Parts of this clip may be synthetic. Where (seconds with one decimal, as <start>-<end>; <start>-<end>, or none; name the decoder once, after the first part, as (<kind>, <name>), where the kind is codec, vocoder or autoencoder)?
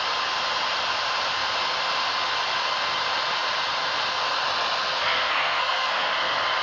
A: 4.8-6.1 (codec, SNAC)